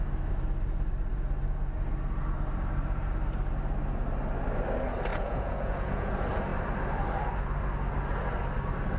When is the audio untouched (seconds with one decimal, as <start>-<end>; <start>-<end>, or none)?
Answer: 0.0-5.1; 6.1-9.0